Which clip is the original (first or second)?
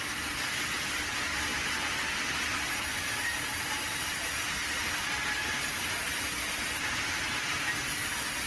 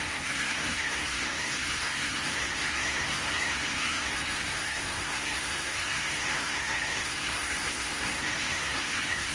first